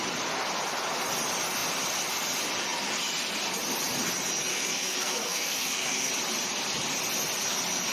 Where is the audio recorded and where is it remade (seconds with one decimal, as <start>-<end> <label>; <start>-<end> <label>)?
0.0-4.5 recorded; 4.5-6.1 remade; 6.1-7.9 recorded